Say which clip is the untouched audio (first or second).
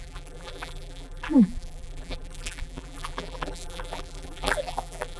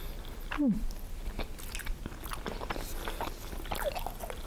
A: second